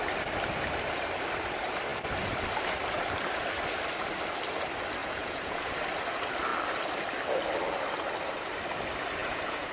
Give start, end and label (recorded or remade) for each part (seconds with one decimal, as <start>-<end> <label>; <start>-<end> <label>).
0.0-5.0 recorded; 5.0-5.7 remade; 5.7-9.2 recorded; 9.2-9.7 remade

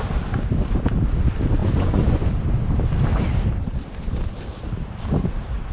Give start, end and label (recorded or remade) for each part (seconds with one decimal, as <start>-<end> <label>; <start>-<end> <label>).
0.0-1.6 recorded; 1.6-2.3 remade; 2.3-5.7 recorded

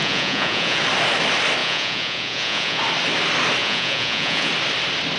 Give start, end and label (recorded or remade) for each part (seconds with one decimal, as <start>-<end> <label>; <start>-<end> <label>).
0.0-0.8 remade; 0.8-1.6 recorded; 1.6-2.8 remade; 2.8-3.6 recorded; 3.6-4.5 remade; 4.5-5.2 recorded

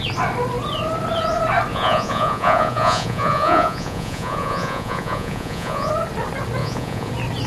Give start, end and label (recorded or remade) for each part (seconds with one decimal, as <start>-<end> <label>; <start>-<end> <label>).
0.0-1.7 recorded; 1.7-5.9 remade; 5.9-6.6 recorded; 6.6-7.1 remade; 7.1-7.5 recorded